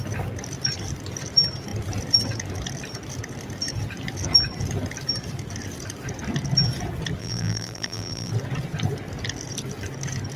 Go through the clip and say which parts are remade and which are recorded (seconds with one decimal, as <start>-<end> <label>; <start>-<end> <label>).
0.0-7.2 recorded; 7.2-8.3 remade; 8.3-10.4 recorded